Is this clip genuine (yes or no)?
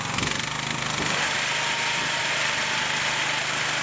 yes